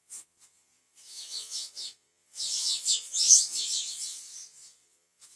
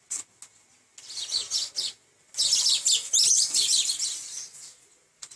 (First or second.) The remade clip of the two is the first